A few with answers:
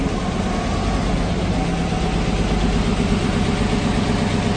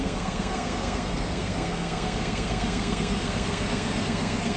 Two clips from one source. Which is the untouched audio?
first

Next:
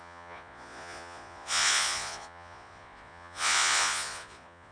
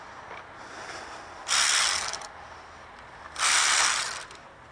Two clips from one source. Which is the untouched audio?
second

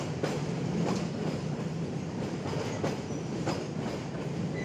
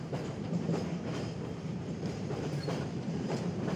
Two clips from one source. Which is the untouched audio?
first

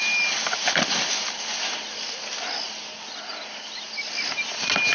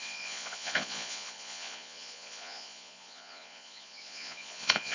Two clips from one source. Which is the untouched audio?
first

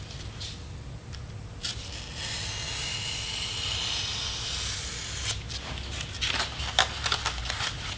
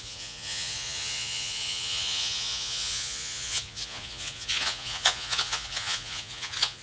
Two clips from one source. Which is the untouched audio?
first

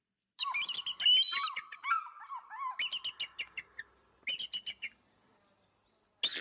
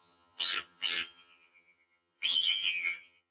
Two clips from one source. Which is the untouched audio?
first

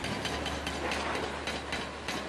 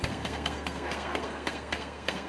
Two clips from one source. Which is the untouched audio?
first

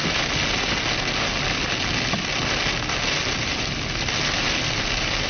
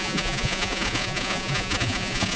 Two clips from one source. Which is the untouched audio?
first